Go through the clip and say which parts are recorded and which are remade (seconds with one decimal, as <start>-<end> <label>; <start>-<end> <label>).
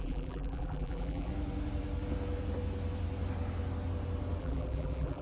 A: 0.0-1.3 remade; 1.3-4.4 recorded; 4.4-5.2 remade